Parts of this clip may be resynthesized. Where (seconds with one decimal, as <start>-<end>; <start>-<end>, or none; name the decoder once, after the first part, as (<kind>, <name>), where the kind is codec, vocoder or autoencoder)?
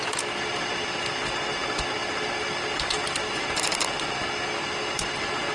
none